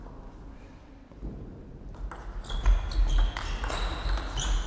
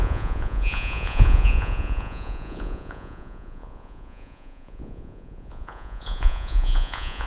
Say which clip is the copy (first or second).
second